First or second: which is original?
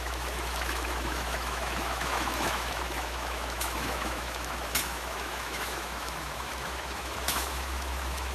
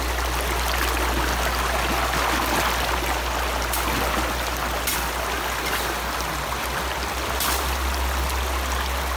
second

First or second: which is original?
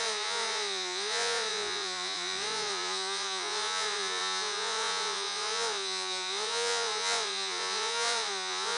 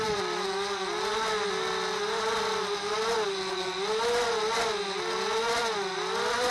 second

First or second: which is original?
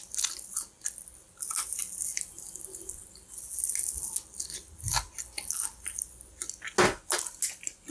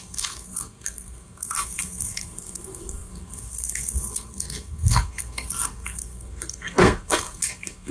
first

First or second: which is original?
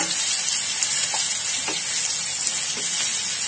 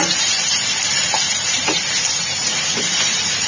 first